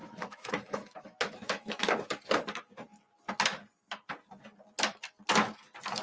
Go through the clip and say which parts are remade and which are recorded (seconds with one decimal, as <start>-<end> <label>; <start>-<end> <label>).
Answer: 0.0-1.8 remade; 1.8-6.0 recorded